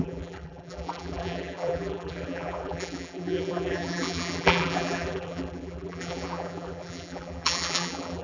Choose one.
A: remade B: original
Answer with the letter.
A